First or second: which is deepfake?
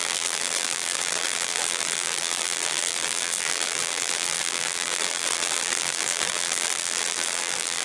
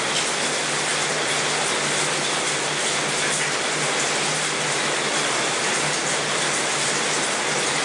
first